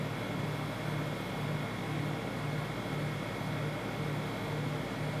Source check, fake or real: real